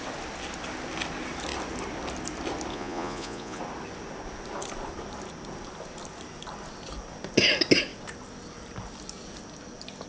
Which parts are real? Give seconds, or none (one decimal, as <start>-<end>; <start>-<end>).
0.0-2.7; 3.6-10.1